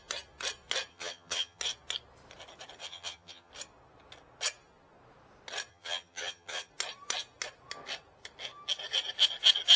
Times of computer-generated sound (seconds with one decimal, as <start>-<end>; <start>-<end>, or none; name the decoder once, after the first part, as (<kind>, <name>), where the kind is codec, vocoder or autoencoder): 0.9-1.6 (vocoder, HiFi-GAN); 2.8-3.5; 5.7-6.7